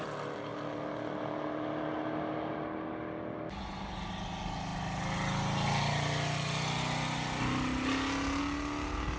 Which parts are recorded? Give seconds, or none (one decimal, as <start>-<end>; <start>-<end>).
0.0-9.2